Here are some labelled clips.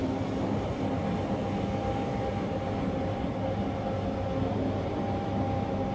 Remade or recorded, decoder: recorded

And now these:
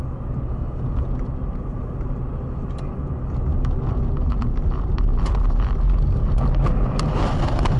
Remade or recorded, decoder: recorded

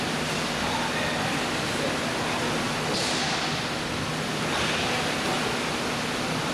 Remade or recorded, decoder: recorded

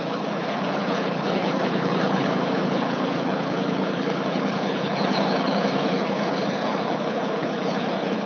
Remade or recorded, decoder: remade, codec, HILCodec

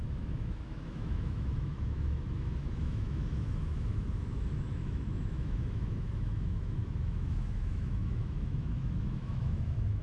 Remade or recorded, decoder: remade, autoencoder, DAC-VAE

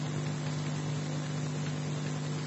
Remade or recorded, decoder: recorded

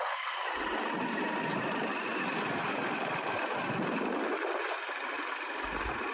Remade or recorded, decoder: recorded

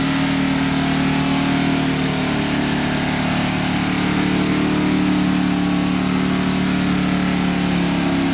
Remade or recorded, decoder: recorded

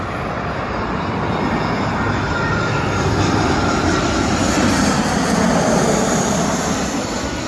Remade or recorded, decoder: remade, vocoder, BigVGAN v2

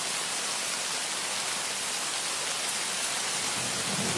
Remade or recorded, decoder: recorded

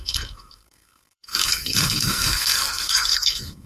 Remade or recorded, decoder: remade, codec, SNAC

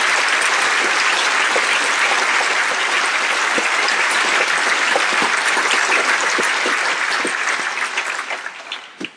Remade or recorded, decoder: recorded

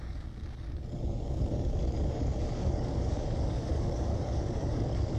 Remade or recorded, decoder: remade, codec, DAC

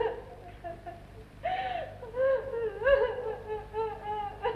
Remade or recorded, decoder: remade, vocoder, BigVGAN v2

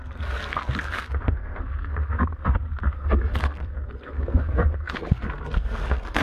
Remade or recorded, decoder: remade, codec, SNAC